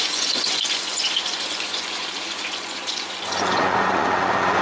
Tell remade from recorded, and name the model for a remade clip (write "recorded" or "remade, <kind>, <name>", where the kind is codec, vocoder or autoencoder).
remade, vocoder, Vocos